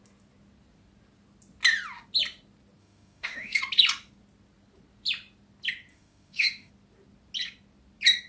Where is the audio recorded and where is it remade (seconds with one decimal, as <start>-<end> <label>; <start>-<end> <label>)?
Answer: 0.0-2.8 recorded; 2.8-3.6 remade; 3.6-5.9 recorded; 5.9-6.7 remade; 6.7-8.3 recorded